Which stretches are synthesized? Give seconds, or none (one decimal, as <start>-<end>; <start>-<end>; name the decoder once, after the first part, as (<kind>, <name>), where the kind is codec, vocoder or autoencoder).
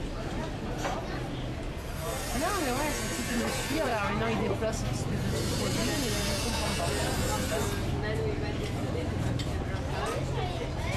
0.0-1.0 (vocoder, BigVGAN v2); 3.3-3.9; 5.0-5.8; 8.8-11.0